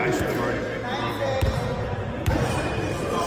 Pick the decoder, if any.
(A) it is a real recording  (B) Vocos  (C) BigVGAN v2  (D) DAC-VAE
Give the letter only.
A